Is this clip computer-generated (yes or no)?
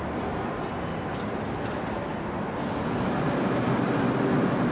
no